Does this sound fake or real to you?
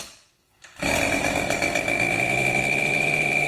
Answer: fake